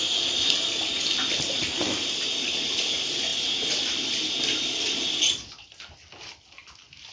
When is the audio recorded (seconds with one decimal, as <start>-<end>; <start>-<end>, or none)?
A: 0.0-7.1